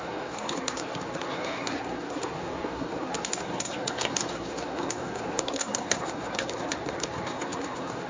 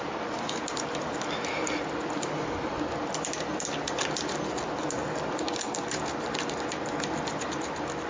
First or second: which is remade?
first